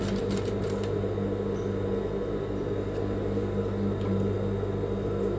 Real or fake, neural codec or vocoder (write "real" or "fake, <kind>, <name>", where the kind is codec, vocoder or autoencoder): real